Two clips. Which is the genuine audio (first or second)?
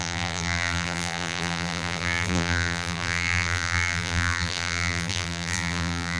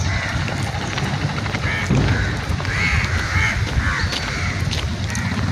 second